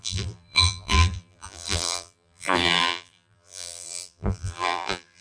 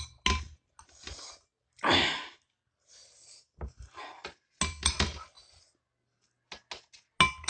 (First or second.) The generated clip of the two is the first